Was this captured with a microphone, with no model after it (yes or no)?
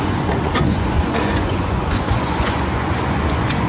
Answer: no